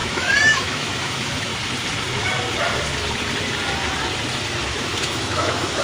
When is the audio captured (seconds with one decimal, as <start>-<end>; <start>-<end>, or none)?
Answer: 1.5-4.6